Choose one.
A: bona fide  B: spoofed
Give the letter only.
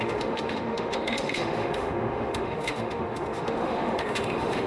B